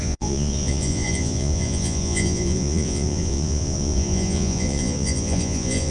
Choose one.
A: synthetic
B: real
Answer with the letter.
A